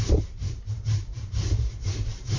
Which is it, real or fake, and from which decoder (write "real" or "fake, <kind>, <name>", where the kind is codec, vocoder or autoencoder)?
fake, vocoder, BigVGAN v2